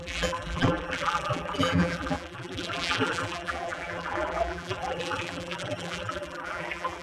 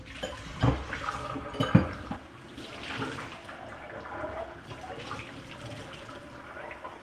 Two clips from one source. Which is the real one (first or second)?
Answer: second